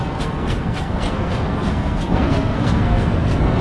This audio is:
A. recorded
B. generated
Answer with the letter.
B